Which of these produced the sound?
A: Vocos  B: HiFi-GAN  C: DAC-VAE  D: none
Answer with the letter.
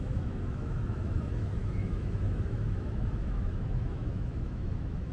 C